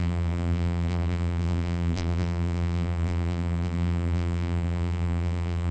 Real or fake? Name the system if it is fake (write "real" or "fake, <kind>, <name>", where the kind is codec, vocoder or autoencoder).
fake, vocoder, BigVGAN v2